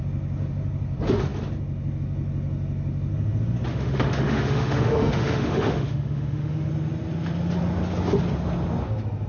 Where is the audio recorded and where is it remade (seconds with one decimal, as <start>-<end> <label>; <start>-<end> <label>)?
0.0-3.7 recorded; 3.7-6.7 remade; 6.7-9.3 recorded